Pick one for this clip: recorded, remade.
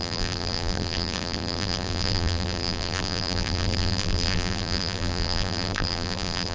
remade